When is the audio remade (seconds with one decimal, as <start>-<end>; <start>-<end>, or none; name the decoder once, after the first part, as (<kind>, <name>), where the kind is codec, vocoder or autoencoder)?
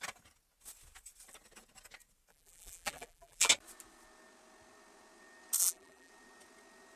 2.3-3.5 (vocoder, BigVGAN v2); 5.6-6.1